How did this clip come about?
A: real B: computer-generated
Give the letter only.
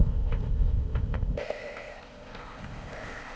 B